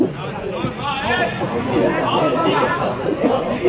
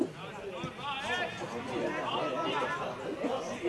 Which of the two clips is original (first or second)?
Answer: second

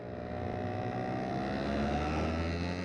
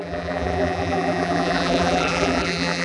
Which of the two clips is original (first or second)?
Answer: first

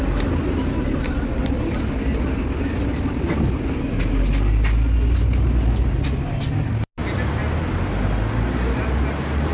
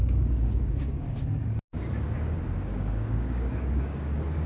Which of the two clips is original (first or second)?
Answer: first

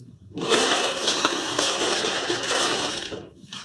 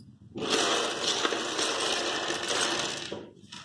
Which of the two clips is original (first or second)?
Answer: second